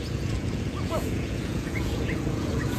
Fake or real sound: fake